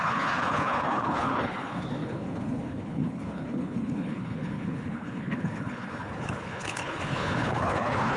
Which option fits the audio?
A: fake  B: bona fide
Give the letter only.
A